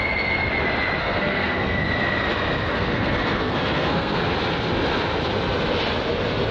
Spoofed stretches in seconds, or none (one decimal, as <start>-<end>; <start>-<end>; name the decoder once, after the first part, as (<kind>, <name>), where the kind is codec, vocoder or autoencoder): 1.0-1.8 (codec, SNAC); 2.7-4.2